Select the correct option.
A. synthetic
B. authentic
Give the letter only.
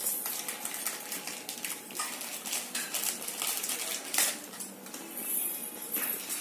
B